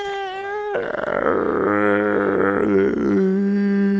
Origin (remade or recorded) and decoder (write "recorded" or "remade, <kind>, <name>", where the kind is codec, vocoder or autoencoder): recorded